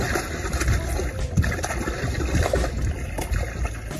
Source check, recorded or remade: recorded